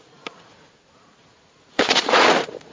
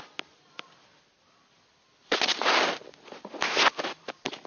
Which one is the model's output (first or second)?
first